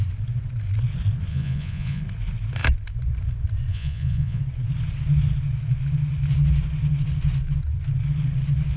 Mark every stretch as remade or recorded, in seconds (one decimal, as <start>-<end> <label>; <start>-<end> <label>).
0.0-1.3 recorded; 1.3-2.0 remade; 2.0-3.7 recorded; 3.7-4.4 remade; 4.4-8.8 recorded